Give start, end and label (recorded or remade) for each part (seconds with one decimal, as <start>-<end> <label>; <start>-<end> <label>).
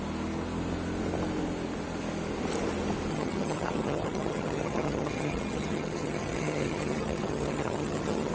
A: 0.0-3.1 recorded; 3.1-8.3 remade